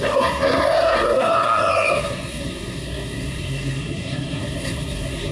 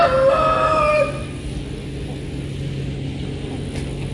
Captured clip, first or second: second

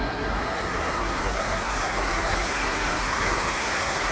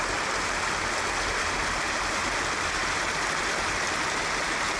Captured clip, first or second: second